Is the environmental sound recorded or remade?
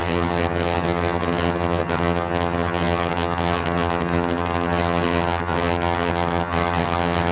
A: remade